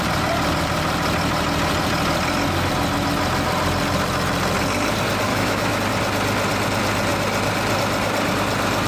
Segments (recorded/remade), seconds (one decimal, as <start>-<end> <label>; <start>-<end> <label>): 0.0-5.3 recorded; 5.3-5.8 remade; 5.8-8.9 recorded